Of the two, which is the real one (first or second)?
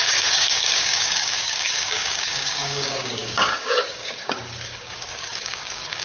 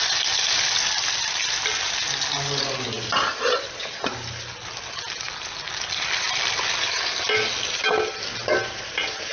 second